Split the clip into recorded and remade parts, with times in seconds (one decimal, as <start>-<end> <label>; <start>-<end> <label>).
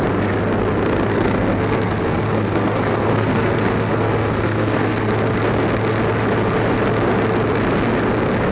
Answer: 0.0-1.1 recorded; 1.1-5.1 remade; 5.1-8.5 recorded